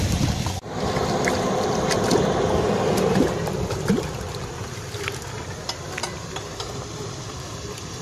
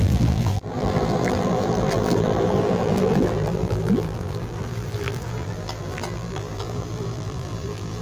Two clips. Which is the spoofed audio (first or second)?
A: second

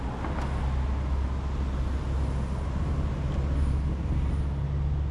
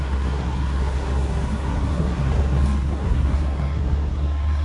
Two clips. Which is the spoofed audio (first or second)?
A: second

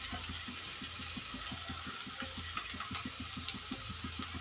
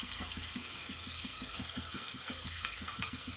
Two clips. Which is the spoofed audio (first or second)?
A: second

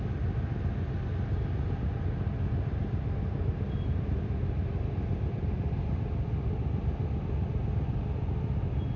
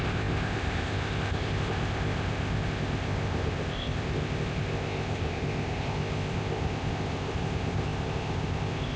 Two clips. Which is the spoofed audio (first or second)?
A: second